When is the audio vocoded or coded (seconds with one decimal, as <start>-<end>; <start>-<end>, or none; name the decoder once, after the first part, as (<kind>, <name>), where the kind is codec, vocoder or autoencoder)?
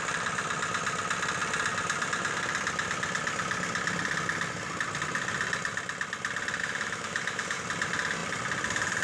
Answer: 6.6-7.6 (autoencoder, DAC-VAE)